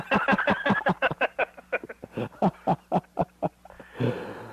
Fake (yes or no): no